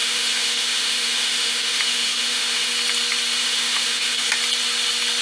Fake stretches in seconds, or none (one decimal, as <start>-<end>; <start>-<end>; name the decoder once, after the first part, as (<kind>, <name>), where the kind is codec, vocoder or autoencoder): 0.0-2.7 (autoencoder, DAC-VAE); 3.4-4.3